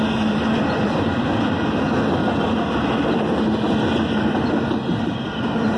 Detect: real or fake real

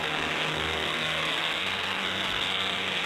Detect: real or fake fake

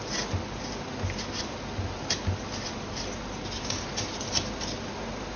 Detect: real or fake real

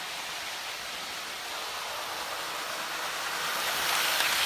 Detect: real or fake real